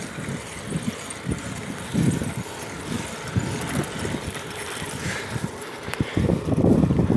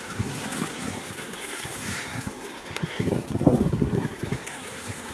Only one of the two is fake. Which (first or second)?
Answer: second